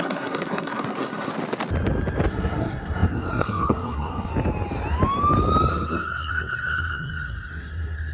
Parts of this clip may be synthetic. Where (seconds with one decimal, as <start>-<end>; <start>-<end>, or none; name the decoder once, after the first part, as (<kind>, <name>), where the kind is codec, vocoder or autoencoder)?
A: 0.0-1.3 (codec, SNAC); 2.3-4.3; 5.7-8.1